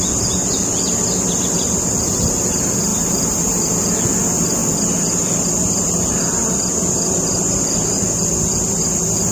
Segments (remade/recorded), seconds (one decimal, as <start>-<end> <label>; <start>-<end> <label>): 0.0-2.9 recorded; 2.9-3.7 remade; 3.7-9.3 recorded